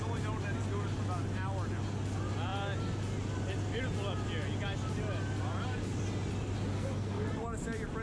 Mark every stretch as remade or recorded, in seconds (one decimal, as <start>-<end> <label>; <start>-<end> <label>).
0.0-6.7 recorded; 6.7-7.3 remade; 7.3-8.0 recorded